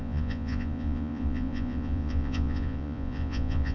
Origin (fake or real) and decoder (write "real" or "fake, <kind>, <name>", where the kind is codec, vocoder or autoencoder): fake, vocoder, Vocos